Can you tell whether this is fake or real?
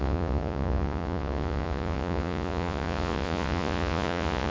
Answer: fake